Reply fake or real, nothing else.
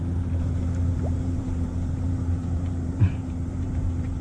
fake